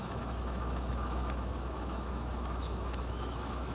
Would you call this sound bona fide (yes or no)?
no